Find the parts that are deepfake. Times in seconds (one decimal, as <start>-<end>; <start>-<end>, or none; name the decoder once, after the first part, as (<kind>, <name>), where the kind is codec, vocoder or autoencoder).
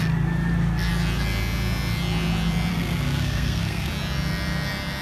2.7-3.9 (codec, SNAC)